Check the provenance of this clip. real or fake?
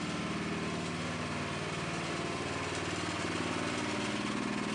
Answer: real